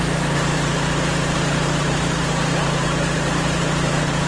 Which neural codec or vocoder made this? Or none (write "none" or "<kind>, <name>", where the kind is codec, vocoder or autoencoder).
vocoder, BigVGAN v2